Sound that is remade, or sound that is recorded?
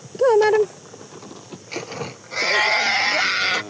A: recorded